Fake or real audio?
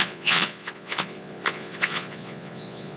fake